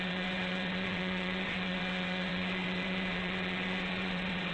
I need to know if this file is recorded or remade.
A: remade